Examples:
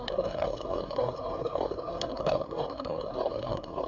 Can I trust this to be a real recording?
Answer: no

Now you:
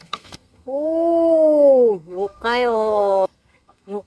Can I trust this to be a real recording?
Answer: no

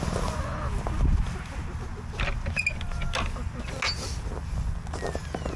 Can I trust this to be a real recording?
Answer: yes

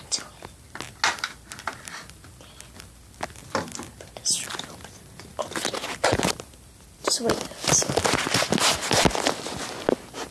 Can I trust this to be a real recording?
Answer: yes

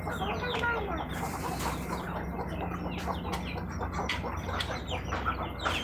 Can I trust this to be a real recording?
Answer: yes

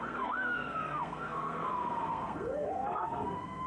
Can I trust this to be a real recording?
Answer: no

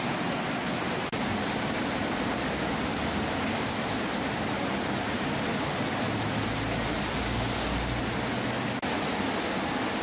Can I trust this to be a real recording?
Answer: yes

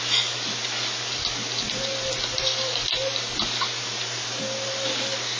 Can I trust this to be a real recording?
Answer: yes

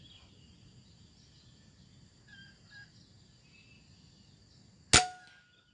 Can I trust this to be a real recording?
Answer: yes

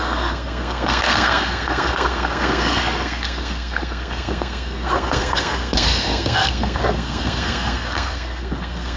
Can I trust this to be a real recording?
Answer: no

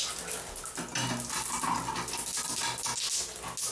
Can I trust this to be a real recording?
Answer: yes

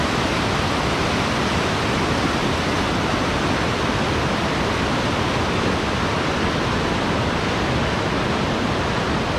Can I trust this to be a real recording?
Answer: yes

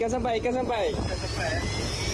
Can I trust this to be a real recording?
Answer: yes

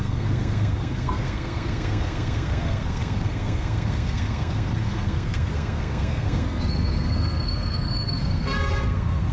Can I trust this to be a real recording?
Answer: no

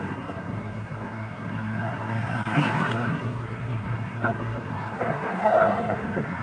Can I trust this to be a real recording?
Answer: no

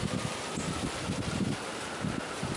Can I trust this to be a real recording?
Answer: yes